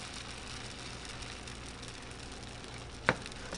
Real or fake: real